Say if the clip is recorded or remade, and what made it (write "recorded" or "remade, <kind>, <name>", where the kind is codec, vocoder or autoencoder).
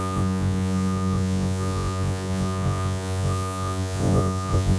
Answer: remade, vocoder, Vocos